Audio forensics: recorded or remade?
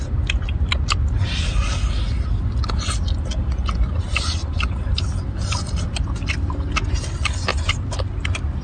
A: recorded